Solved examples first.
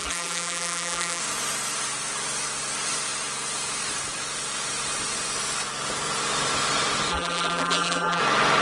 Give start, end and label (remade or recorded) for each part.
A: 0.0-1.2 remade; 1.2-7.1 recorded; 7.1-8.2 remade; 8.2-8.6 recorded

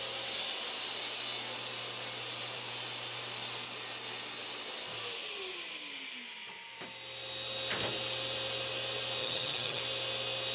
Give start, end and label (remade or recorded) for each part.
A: 0.0-9.2 recorded; 9.2-9.8 remade; 9.8-10.5 recorded

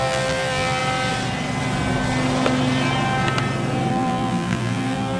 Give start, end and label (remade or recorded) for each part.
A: 0.0-0.8 remade; 0.8-3.9 recorded; 3.9-5.2 remade

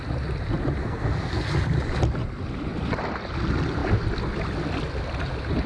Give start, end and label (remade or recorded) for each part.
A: 0.0-0.8 recorded; 0.8-1.4 remade; 1.4-5.7 recorded

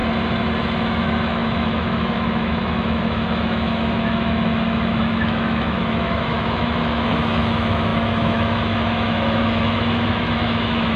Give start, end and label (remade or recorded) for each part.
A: 0.0-0.6 recorded; 0.6-11.0 remade

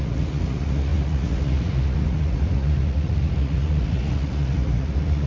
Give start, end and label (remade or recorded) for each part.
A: 0.0-5.3 remade

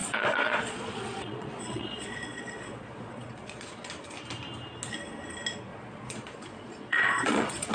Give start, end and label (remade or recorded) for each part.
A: 0.0-3.9 remade; 3.9-5.7 recorded; 5.7-7.7 remade

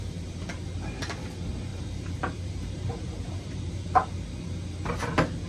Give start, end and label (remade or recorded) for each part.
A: 0.0-1.7 recorded; 1.7-3.7 remade; 3.7-5.5 recorded